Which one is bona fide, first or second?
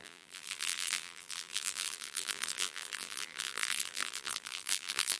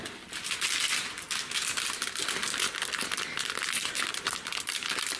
second